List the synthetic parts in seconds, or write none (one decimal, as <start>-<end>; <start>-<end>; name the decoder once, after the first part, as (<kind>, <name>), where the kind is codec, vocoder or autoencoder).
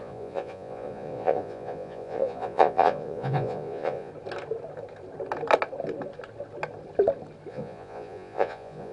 0.0-4.1 (vocoder, Vocos); 7.5-8.9